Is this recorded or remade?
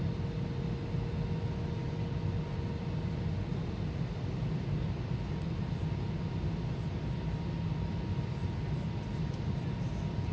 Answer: recorded